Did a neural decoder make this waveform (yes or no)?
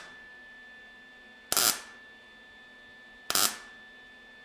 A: no